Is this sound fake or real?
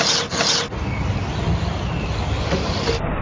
real